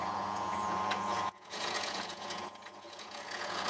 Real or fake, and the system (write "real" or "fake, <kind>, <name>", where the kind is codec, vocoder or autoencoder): fake, vocoder, Vocos